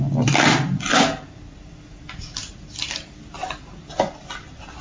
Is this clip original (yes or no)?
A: yes